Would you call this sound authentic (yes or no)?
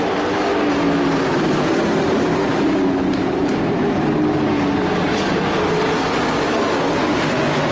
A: yes